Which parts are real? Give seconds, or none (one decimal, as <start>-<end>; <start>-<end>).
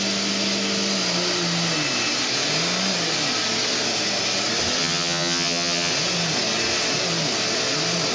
0.0-4.8; 5.9-8.1